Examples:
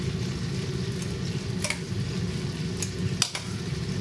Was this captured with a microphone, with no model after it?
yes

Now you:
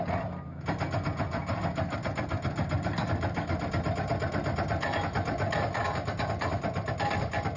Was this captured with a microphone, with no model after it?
yes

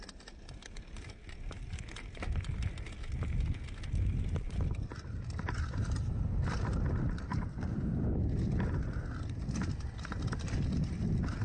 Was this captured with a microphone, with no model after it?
yes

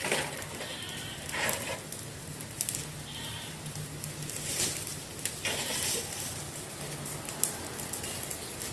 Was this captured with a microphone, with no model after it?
yes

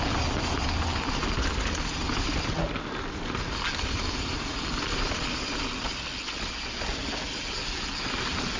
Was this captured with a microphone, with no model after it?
yes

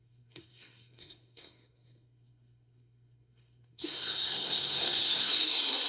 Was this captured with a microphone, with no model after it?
no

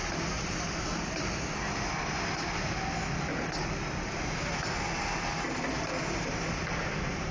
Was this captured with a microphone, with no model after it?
yes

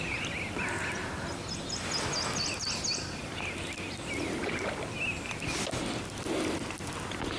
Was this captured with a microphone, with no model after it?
yes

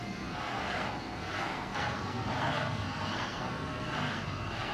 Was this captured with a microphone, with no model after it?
no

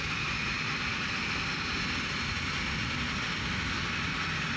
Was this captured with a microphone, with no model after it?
yes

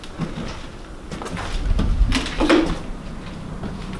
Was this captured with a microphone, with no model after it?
yes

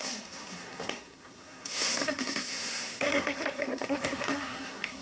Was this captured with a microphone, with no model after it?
no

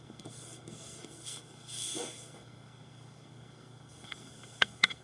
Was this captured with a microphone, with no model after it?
no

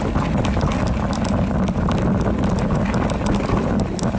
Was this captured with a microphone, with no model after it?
yes